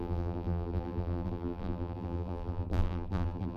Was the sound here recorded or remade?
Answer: remade